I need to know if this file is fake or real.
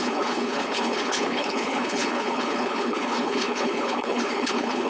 fake